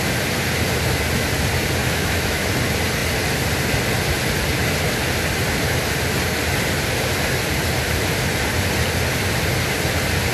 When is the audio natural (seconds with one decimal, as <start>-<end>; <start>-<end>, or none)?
0.0-1.8; 2.5-10.3